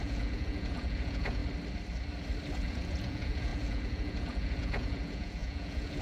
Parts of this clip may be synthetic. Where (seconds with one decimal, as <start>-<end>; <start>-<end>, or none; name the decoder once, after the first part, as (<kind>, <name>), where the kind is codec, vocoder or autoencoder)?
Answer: 0.0-1.4 (vocoder, Vocos); 2.6-6.0